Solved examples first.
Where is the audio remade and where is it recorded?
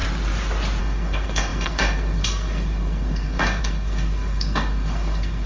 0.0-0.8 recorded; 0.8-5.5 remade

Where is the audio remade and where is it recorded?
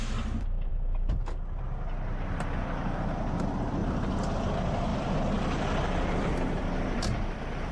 0.0-3.8 recorded; 3.8-4.5 remade; 4.5-4.9 recorded; 4.9-7.7 remade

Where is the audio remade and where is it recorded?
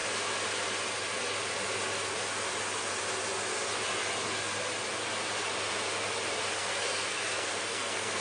0.0-6.6 recorded; 6.6-8.2 remade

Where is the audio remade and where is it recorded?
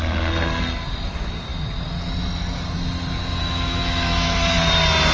0.0-3.4 recorded; 3.4-4.6 remade; 4.6-5.1 recorded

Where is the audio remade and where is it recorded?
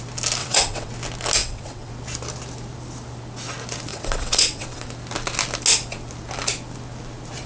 0.0-0.4 recorded; 0.4-0.9 remade; 0.9-1.4 recorded; 1.4-1.9 remade; 1.9-3.9 recorded; 3.9-4.9 remade; 4.9-7.5 recorded